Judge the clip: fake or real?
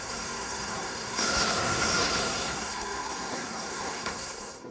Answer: fake